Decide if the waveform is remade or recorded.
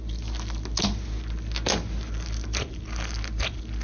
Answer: recorded